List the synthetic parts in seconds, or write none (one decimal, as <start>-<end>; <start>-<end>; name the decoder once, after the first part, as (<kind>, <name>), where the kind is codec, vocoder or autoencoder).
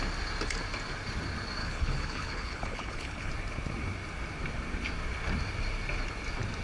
1.6-3.3 (codec, HILCodec)